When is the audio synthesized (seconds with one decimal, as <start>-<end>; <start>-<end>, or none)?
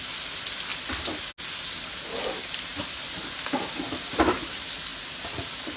none